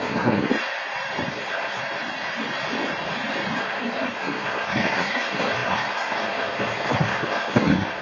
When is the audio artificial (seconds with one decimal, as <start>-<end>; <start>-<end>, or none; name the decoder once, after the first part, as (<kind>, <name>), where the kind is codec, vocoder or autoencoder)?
0.0-0.5 (codec, SNAC); 1.3-1.8; 3.6-8.0